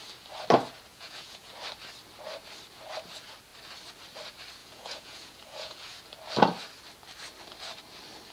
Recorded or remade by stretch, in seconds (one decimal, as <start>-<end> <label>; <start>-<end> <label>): 0.0-0.9 recorded; 0.9-1.5 remade; 1.5-4.6 recorded; 4.6-6.0 remade; 6.0-8.3 recorded